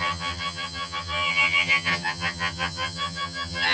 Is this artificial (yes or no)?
yes